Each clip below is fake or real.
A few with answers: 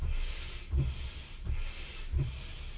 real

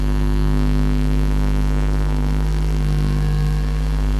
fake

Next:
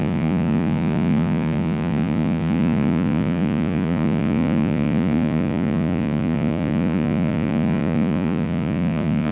fake